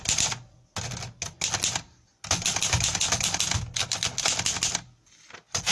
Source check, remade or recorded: recorded